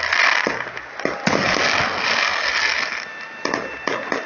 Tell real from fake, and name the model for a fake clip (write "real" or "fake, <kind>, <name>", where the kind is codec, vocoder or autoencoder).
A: real